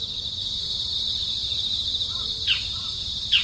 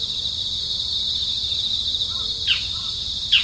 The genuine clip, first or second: second